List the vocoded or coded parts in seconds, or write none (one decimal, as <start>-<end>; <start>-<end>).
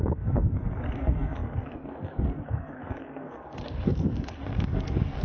0.0-5.2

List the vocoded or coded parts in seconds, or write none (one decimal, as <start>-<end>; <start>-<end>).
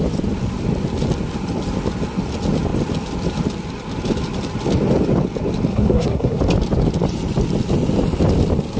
5.7-6.4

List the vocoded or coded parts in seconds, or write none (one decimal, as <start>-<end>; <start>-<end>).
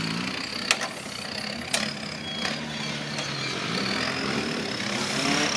none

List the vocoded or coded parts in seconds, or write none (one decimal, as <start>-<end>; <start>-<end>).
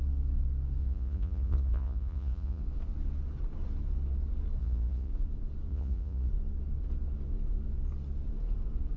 0.8-2.6; 4.6-5.1; 5.7-6.3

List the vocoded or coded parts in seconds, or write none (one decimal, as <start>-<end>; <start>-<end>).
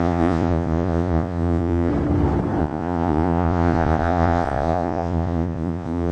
0.0-1.9; 2.6-6.1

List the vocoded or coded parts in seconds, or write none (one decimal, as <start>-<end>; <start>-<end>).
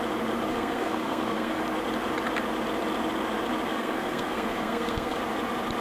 0.5-1.6; 3.7-5.2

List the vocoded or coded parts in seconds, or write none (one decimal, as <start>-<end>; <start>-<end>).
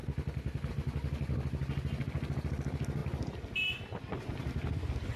none